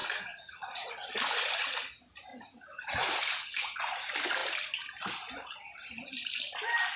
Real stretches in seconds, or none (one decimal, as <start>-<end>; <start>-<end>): 1.1-2.3; 4.0-7.0